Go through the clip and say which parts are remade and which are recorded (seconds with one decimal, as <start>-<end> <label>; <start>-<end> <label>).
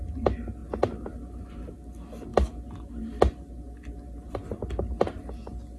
0.0-5.8 recorded